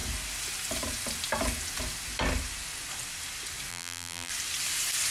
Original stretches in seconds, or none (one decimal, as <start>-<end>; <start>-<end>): 0.0-3.7; 4.3-5.1

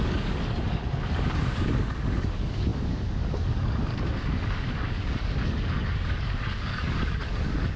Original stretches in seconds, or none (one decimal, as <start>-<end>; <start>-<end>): none

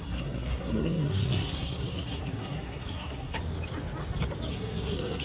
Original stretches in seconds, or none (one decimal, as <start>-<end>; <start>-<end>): 3.4-4.5